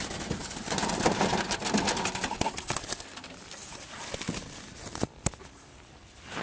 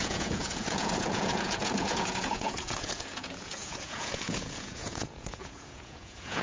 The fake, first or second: second